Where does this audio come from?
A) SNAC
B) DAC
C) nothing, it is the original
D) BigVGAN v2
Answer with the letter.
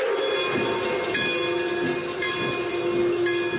C